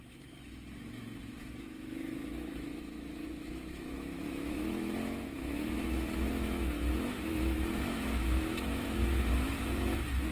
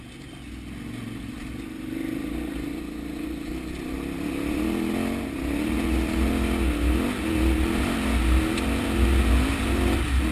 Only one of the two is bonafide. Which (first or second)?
second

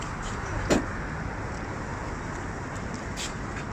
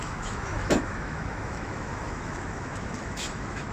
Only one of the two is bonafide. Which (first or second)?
first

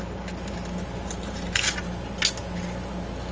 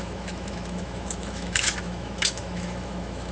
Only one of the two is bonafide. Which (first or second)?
first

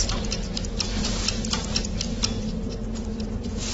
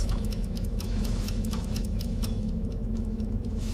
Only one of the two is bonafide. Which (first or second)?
first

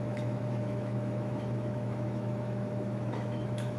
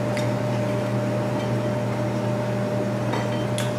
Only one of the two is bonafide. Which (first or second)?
second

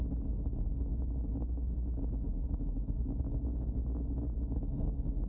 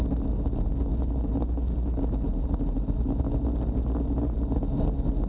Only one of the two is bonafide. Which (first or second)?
second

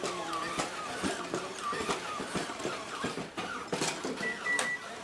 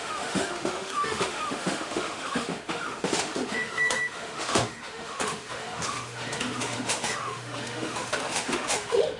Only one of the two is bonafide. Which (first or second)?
first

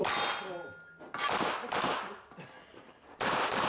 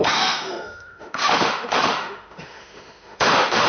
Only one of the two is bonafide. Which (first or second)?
first